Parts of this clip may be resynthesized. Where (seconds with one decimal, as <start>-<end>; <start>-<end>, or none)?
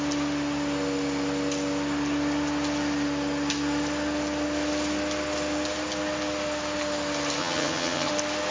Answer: 7.4-8.1